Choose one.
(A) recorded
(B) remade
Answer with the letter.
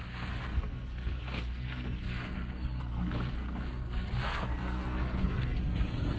B